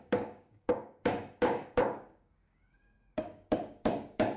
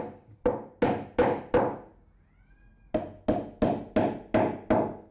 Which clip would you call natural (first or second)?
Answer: second